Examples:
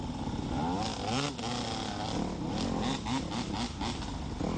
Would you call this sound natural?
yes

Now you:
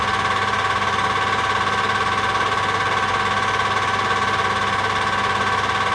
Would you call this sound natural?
yes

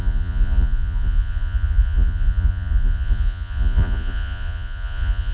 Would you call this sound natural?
no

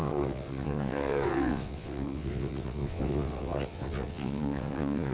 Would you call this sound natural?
no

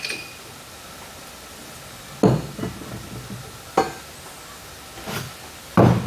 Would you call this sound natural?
yes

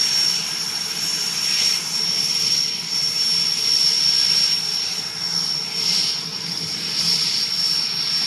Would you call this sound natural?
yes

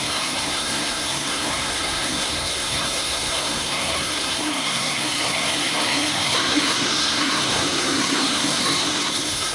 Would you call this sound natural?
no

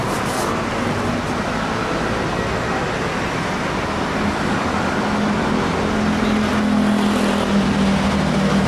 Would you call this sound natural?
yes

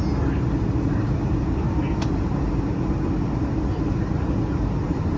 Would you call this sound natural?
yes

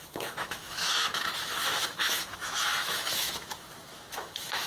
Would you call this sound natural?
no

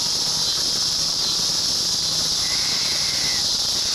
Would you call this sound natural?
yes